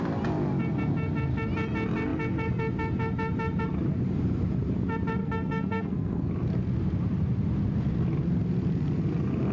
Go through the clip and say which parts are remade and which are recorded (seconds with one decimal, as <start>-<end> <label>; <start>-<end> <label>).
0.0-5.2 recorded; 5.2-6.3 remade; 6.3-9.5 recorded